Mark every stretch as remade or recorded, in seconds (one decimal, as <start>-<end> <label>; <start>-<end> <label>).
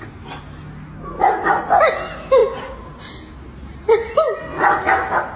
0.0-5.4 recorded